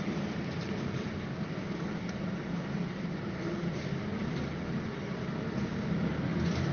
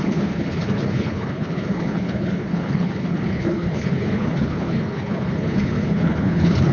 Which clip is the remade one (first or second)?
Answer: second